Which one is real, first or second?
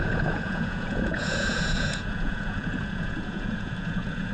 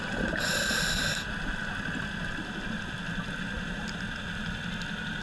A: second